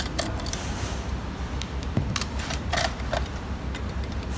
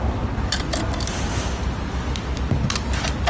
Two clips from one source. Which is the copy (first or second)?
first